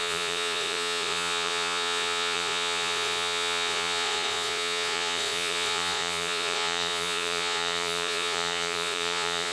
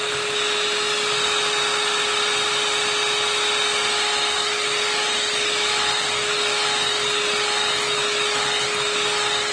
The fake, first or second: first